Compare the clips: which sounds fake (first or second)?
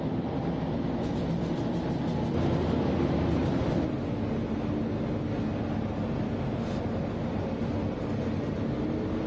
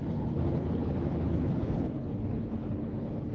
second